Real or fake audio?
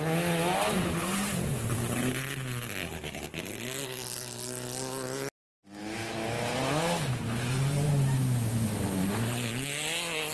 real